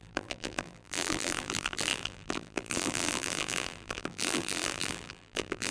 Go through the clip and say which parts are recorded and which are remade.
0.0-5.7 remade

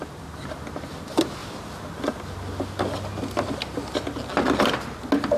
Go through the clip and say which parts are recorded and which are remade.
0.0-5.4 recorded

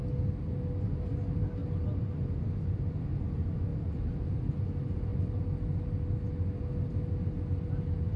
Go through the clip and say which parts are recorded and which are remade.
0.0-3.7 recorded; 3.7-4.5 remade; 4.5-8.2 recorded

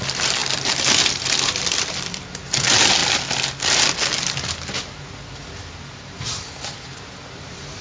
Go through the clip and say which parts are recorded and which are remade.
0.0-0.4 remade; 0.4-1.2 recorded; 1.2-3.0 remade; 3.0-7.8 recorded

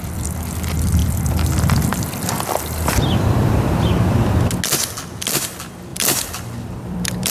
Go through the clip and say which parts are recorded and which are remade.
0.0-1.0 recorded; 1.0-3.9 remade; 3.9-5.9 recorded; 5.9-7.3 remade